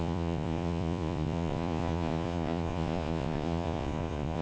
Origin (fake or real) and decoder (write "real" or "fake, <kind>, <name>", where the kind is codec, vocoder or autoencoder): fake, vocoder, Vocos